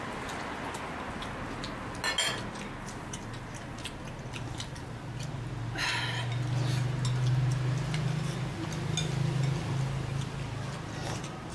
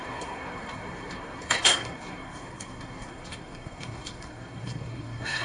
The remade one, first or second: second